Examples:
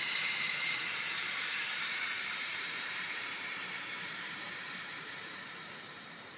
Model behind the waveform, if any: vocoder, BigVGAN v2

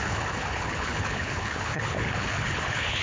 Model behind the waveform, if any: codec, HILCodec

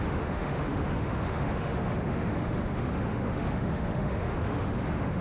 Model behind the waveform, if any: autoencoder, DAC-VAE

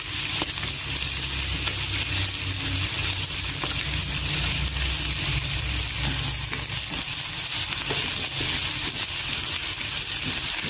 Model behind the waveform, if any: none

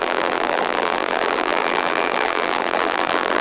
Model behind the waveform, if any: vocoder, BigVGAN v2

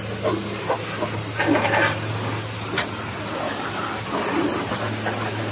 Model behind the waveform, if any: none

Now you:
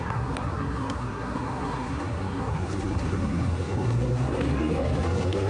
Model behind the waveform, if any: codec, SNAC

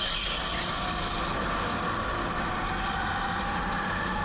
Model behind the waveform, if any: none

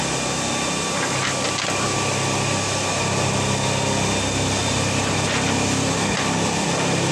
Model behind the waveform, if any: none